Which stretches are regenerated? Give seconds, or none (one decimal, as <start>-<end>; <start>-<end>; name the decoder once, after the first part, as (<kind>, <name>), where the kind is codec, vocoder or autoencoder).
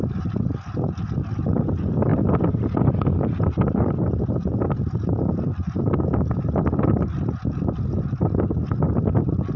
none